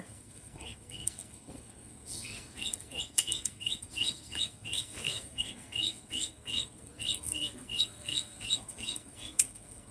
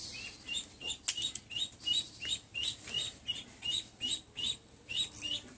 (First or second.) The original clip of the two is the second